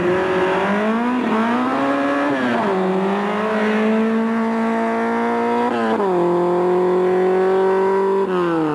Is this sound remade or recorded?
recorded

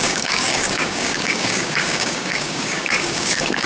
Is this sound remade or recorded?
remade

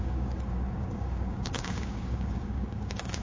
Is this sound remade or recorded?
remade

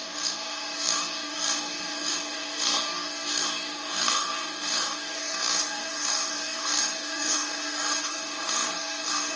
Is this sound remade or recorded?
remade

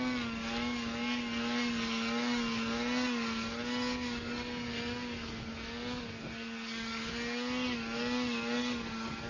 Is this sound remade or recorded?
remade